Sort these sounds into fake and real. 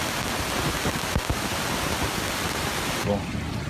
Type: real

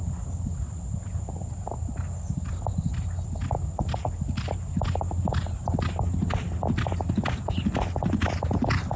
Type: real